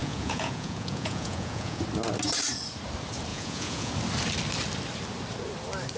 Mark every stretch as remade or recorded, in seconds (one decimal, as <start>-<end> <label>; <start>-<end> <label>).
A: 0.0-1.8 remade; 1.8-3.3 recorded; 3.3-3.9 remade; 3.9-6.0 recorded